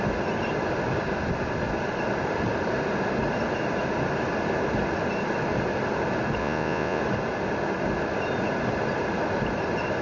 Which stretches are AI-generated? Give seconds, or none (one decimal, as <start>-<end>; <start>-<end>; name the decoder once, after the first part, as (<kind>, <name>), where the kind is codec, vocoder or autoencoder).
6.4-7.0 (vocoder, Vocos)